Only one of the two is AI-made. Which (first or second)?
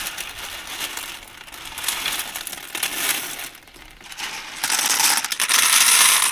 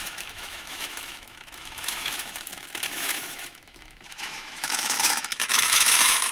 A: second